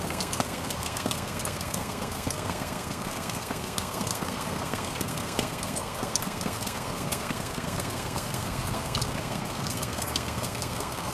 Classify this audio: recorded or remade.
remade